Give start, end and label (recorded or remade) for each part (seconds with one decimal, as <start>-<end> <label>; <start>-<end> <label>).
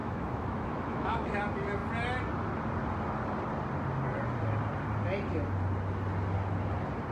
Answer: 0.0-1.3 remade; 1.3-7.1 recorded